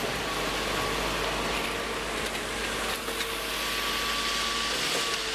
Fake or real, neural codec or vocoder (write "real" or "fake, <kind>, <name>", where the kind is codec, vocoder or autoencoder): real